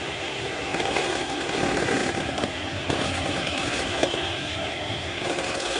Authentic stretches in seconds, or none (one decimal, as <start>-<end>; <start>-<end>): none